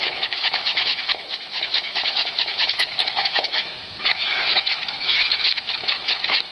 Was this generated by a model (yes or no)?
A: yes